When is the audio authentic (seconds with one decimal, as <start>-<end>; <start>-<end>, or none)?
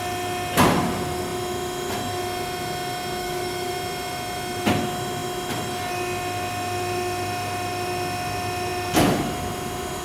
0.0-3.2; 3.7-10.0